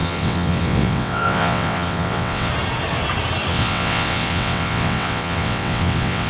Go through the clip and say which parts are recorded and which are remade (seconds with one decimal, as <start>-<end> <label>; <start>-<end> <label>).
0.0-2.5 remade; 2.5-3.5 recorded; 3.5-6.3 remade